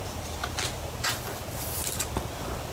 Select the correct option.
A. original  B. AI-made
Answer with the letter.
A